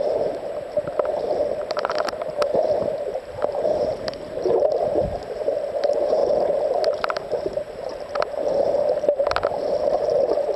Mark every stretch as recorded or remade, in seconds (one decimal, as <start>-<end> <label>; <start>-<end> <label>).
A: 0.0-6.2 remade; 6.2-7.4 recorded; 7.4-7.9 remade; 7.9-9.6 recorded; 9.6-10.6 remade